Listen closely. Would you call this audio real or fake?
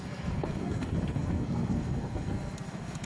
fake